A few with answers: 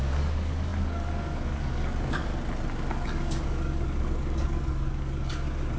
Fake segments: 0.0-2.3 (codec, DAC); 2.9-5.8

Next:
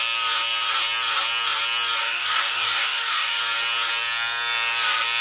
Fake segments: 2.0-3.4 (codec, DAC)